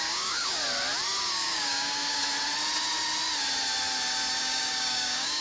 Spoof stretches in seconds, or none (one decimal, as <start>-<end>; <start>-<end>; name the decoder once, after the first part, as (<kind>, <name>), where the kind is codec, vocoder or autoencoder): 0.0-0.6 (codec, DAC); 1.2-2.2; 4.4-5.4